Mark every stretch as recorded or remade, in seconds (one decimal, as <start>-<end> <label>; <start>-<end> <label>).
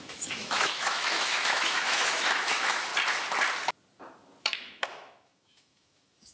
0.0-2.9 remade; 2.9-4.4 recorded; 4.4-6.3 remade